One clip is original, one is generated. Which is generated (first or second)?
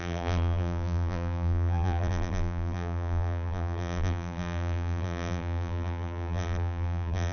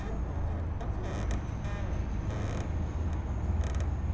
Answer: first